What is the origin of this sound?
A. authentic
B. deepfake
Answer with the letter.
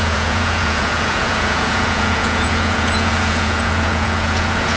B